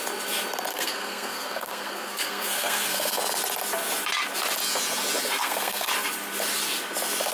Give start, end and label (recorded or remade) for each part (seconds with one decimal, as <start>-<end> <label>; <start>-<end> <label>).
0.0-0.7 recorded; 0.7-3.2 remade; 3.2-5.4 recorded; 5.4-5.9 remade; 5.9-7.3 recorded